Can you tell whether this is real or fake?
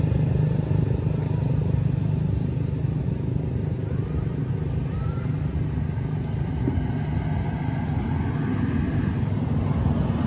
real